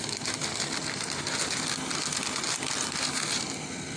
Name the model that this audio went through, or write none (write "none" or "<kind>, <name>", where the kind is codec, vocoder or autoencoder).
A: none